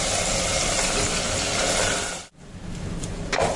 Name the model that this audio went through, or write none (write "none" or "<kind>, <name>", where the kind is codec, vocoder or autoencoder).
none